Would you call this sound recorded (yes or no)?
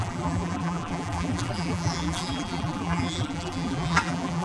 no